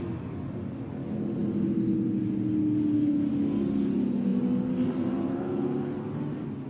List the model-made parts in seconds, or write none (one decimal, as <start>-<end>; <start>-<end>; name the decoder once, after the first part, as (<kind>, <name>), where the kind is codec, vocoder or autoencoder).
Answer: none